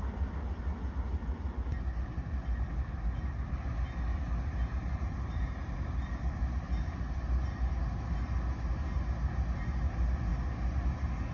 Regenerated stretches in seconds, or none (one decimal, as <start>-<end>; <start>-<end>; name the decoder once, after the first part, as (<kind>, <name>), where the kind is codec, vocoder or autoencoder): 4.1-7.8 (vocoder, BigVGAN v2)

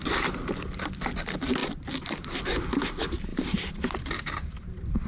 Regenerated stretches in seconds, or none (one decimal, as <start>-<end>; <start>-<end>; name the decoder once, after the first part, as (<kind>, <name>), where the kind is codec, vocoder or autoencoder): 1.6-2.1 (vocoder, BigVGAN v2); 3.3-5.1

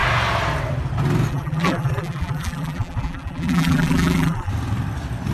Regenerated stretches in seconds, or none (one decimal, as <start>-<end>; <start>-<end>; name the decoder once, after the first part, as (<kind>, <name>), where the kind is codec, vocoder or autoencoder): 1.3-4.5 (vocoder, BigVGAN v2)

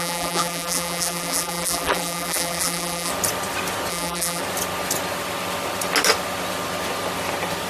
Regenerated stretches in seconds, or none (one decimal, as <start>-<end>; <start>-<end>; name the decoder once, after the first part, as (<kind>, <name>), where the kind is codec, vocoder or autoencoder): 0.0-3.1 (vocoder, BigVGAN v2); 3.9-4.4

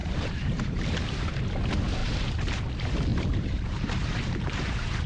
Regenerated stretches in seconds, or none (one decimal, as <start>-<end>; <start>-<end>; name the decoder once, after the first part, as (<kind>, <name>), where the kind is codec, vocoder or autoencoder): 0.0-1.3 (vocoder, BigVGAN v2); 3.1-5.1